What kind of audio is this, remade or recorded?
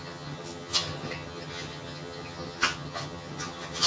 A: remade